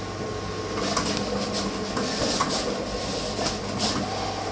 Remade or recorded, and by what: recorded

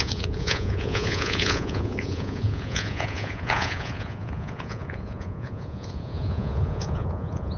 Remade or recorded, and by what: remade, vocoder, Vocos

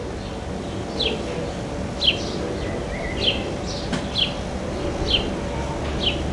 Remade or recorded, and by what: recorded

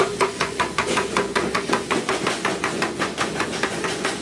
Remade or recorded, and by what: remade, vocoder, Vocos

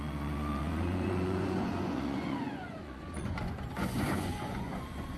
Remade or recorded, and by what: remade, vocoder, Vocos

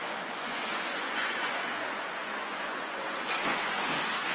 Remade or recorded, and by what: remade, vocoder, Vocos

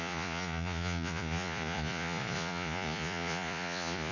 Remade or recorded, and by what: remade, vocoder, Vocos